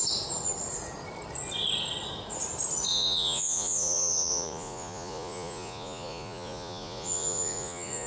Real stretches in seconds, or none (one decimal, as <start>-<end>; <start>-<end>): 0.0-2.9